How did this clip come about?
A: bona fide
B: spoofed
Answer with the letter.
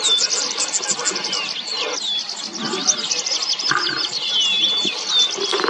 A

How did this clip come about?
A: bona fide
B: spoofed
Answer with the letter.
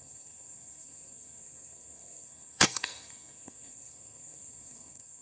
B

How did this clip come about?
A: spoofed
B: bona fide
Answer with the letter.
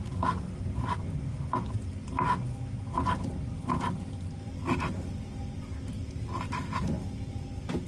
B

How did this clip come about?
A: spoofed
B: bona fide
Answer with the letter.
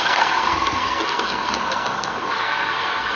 A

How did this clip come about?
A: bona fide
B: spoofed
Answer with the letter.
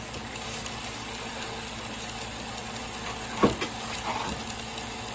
A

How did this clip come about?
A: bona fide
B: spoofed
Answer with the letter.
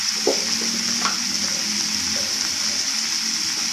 A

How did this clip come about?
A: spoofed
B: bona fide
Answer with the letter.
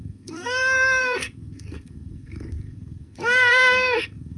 A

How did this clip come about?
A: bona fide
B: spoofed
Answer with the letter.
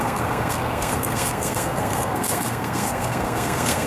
B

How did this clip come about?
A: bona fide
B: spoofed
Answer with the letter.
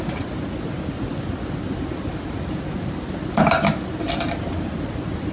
A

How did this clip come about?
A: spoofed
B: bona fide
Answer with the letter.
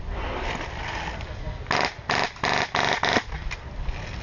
B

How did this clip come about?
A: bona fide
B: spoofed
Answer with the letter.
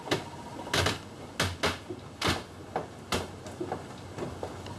A